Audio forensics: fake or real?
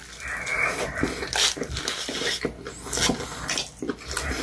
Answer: real